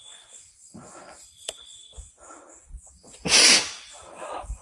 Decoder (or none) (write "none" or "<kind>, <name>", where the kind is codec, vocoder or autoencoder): none